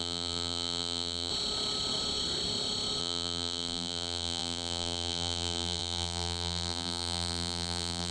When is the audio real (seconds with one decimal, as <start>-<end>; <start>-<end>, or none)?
1.3-3.0